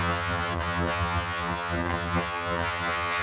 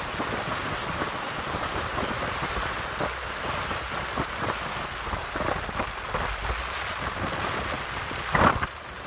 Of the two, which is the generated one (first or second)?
first